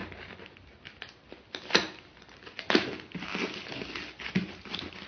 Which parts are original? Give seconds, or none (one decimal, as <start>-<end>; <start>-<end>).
0.0-5.1